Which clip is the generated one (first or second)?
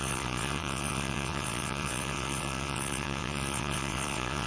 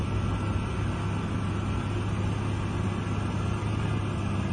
first